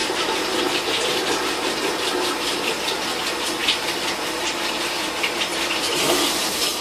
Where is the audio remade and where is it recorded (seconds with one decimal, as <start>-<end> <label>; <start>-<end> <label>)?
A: 0.0-0.6 remade; 0.6-5.5 recorded; 5.5-6.8 remade

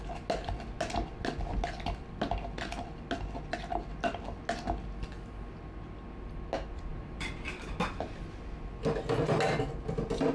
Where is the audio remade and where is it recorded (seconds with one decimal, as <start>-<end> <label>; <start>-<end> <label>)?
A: 0.0-6.9 recorded; 6.9-7.8 remade; 7.8-10.3 recorded

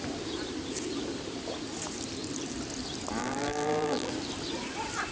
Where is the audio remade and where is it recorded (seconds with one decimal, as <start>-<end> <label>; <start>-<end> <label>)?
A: 0.0-3.2 recorded; 3.2-4.1 remade; 4.1-5.1 recorded

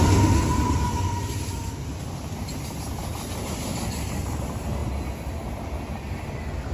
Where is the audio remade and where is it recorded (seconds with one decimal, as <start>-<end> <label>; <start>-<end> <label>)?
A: 0.0-6.7 recorded

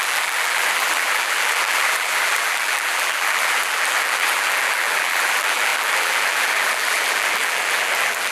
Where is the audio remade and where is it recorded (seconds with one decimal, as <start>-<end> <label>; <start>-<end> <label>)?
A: 0.0-8.3 remade

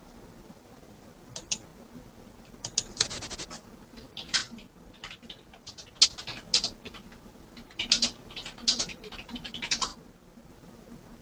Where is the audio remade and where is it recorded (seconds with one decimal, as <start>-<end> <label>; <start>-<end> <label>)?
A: 0.0-11.2 recorded

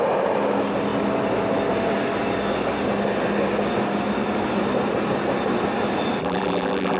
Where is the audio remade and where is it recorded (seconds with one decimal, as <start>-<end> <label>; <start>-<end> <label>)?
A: 0.0-6.2 recorded; 6.2-7.0 remade